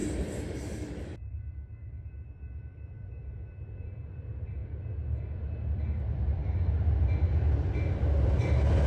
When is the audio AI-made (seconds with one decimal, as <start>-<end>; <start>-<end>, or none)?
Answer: 0.0-4.6; 6.0-6.4